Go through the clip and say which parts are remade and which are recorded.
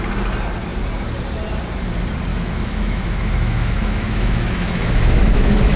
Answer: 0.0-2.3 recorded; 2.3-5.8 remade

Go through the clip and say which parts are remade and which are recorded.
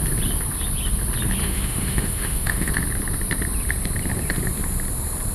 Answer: 0.0-1.4 recorded; 1.4-2.7 remade; 2.7-5.3 recorded